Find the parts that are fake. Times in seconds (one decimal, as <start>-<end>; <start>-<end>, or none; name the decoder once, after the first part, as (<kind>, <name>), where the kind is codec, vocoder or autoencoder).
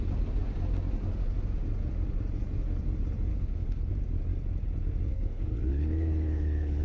3.3-3.9 (codec, HILCodec); 5.1-6.8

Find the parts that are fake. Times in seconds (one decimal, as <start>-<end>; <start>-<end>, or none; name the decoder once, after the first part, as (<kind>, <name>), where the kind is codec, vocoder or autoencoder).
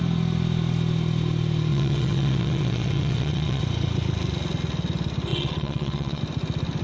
1.7-3.6 (vocoder, WaveNeXt); 5.3-6.2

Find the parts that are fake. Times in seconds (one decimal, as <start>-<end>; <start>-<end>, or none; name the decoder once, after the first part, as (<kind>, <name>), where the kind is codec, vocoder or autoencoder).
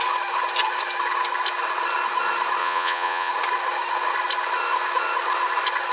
2.6-3.3 (vocoder, Vocos)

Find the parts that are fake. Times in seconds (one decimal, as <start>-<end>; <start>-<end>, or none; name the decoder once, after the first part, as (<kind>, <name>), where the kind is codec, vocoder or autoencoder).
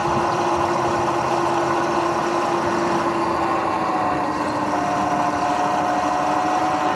none